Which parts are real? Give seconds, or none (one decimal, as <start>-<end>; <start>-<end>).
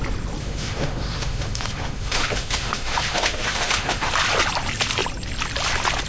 0.0-0.4; 4.1-6.1